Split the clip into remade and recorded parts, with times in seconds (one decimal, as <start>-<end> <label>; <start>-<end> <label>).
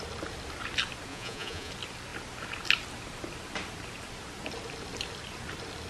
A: 0.0-1.1 recorded; 1.1-1.7 remade; 1.7-5.9 recorded